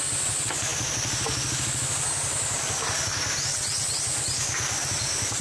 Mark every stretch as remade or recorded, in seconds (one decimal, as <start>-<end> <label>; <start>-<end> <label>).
0.0-3.5 recorded; 3.5-4.0 remade; 4.0-5.4 recorded